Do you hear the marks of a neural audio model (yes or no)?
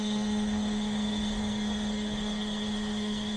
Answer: yes